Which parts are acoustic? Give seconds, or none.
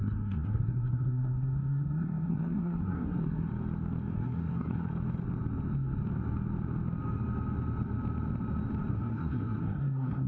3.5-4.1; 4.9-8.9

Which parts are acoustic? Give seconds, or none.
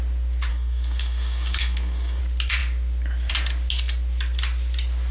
0.0-0.5; 2.2-5.1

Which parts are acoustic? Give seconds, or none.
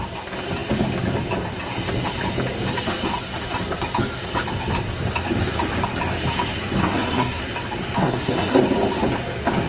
0.0-6.8; 7.4-8.0; 8.6-9.7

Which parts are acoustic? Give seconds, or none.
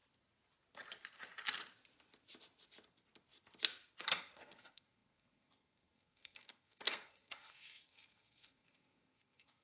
0.0-4.0